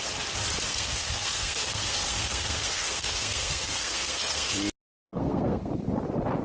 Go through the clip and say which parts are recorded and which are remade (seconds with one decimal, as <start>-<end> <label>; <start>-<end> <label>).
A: 0.0-0.7 recorded; 0.7-4.5 remade; 4.5-4.9 recorded; 4.9-5.7 remade; 5.7-6.4 recorded